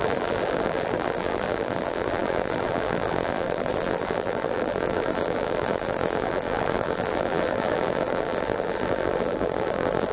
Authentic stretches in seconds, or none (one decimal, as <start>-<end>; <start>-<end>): none